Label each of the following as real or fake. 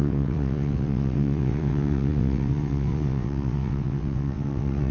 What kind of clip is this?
fake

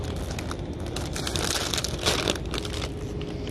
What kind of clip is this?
real